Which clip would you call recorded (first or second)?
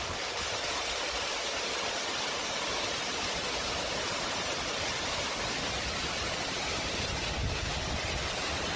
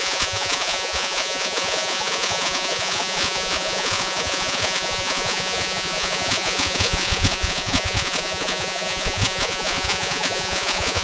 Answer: first